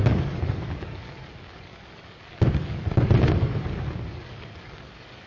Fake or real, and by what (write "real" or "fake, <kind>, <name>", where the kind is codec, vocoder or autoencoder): fake, codec, DAC